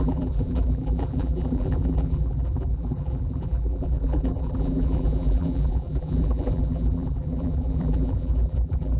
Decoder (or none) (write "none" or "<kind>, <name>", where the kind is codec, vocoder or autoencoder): vocoder, BigVGAN v2